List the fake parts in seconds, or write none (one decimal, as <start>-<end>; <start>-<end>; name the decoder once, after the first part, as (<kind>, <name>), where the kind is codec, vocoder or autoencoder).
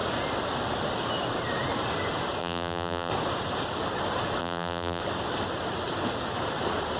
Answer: 2.4-3.1 (vocoder, BigVGAN v2); 4.4-5.0